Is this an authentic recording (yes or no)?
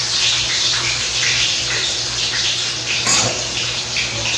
yes